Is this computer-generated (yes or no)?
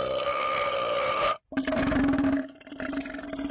yes